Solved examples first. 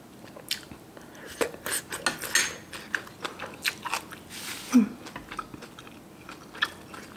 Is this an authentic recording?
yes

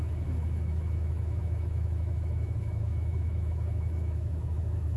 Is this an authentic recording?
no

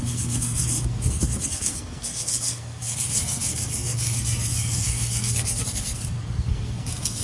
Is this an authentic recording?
no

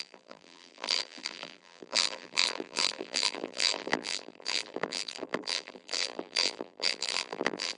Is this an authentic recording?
no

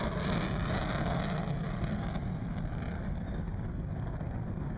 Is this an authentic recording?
yes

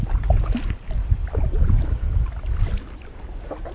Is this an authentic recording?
yes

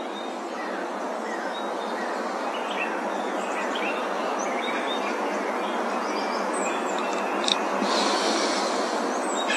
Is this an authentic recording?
yes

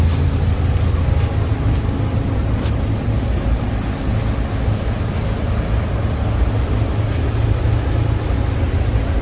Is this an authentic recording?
yes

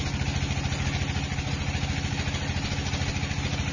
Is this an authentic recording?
yes